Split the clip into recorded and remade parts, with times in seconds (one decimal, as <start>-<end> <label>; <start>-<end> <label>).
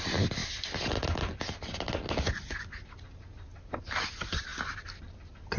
0.0-5.6 recorded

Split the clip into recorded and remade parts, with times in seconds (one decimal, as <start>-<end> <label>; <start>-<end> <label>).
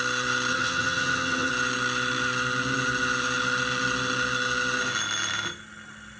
0.0-0.5 recorded; 0.5-1.5 remade; 1.5-6.2 recorded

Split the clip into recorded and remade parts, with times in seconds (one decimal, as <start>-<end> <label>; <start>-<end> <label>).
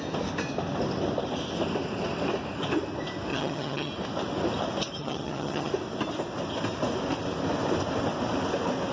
0.0-3.3 recorded; 3.3-3.9 remade; 3.9-5.0 recorded; 5.0-5.7 remade; 5.7-8.9 recorded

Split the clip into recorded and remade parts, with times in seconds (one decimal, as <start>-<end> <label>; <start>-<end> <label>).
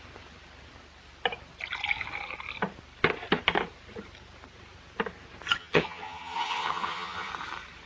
0.0-5.6 recorded; 5.6-7.3 remade; 7.3-7.9 recorded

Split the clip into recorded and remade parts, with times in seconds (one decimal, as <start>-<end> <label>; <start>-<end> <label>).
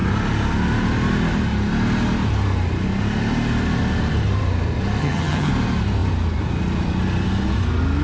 0.0-5.0 recorded; 5.0-5.5 remade; 5.5-8.0 recorded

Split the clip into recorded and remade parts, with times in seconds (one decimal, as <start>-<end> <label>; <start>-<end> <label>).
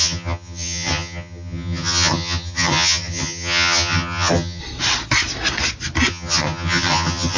0.0-4.6 remade; 4.6-6.1 recorded; 6.1-7.4 remade